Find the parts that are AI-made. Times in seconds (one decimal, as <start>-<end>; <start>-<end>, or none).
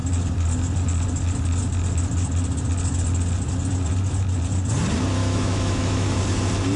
5.2-6.2